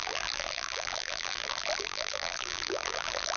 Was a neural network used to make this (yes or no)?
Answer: yes